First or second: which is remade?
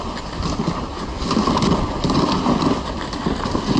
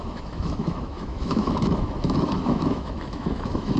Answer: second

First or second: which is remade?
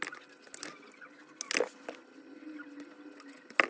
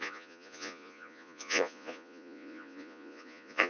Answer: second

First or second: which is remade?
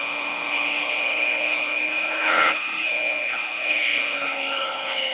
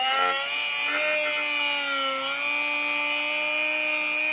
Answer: first